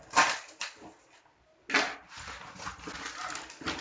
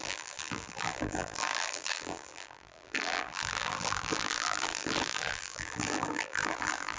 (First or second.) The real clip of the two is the first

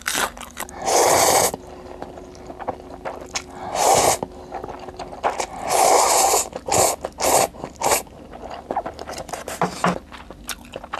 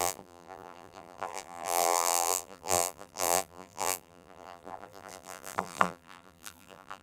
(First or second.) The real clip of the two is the first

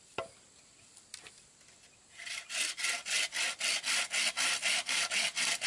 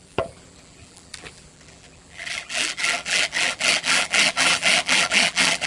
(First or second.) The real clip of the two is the first